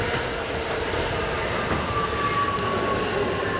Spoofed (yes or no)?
no